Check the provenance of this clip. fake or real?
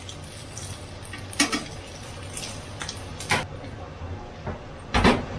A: real